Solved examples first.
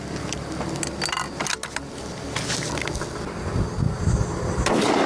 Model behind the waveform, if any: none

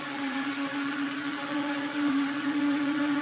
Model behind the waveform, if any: vocoder, Vocos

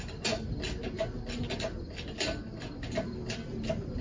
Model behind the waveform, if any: none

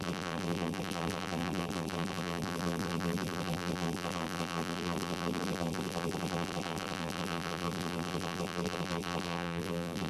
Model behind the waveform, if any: vocoder, BigVGAN v2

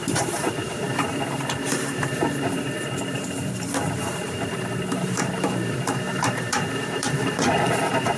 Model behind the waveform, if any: vocoder, BigVGAN v2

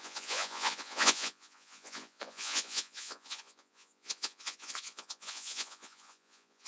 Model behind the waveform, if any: vocoder, Vocos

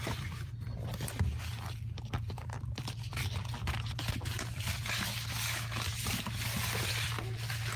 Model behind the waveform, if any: none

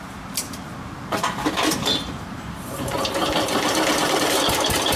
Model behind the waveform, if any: vocoder, BigVGAN v2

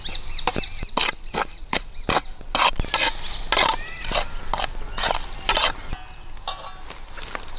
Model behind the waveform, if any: none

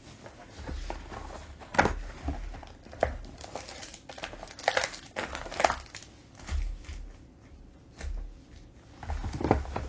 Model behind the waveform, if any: none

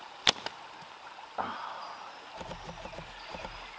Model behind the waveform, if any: none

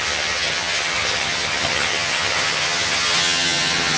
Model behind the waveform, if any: vocoder, HiFi-GAN